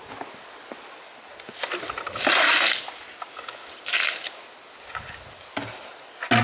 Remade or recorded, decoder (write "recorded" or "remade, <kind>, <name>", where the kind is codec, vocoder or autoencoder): recorded